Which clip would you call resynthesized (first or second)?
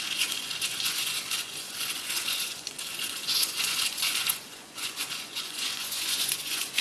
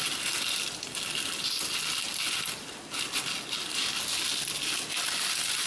first